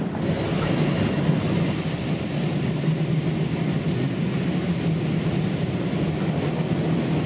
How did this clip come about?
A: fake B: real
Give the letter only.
B